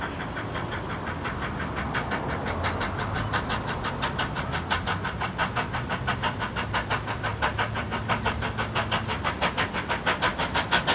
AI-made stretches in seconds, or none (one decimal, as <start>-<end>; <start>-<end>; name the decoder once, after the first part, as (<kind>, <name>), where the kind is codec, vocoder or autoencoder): none